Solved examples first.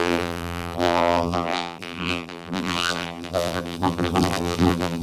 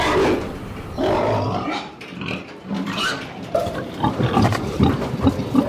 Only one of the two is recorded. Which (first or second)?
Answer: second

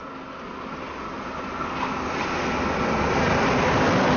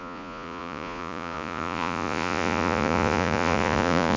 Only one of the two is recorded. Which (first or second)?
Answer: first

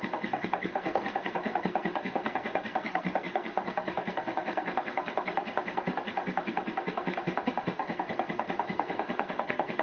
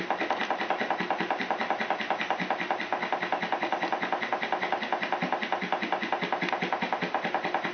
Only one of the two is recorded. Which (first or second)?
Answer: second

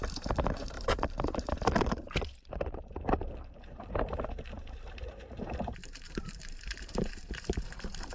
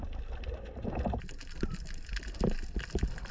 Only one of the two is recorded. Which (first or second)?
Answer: second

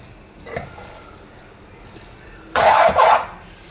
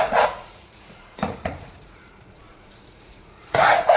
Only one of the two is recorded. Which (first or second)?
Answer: first